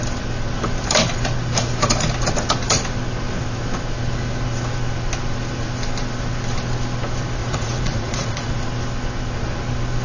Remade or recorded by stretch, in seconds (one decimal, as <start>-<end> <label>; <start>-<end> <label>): 0.0-7.4 recorded; 7.4-8.6 remade; 8.6-10.0 recorded

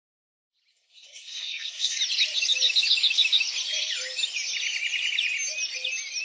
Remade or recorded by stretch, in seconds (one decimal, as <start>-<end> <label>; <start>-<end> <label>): 0.0-0.7 recorded; 0.7-2.0 remade; 2.0-6.2 recorded

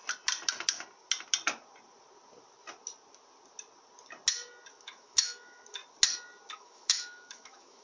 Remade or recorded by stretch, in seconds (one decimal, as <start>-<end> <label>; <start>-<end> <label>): 0.0-4.7 recorded; 4.7-5.8 remade; 5.8-6.5 recorded; 6.5-7.8 remade